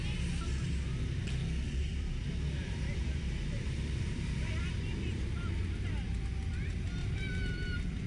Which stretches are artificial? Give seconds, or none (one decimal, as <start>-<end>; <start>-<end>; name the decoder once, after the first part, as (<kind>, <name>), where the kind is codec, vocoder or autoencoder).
1.8-5.6 (vocoder, BigVGAN v2); 7.0-8.1